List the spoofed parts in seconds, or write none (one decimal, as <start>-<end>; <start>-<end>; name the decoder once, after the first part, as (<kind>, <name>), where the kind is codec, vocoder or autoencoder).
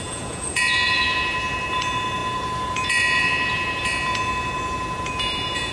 0.0-5.7 (vocoder, Vocos)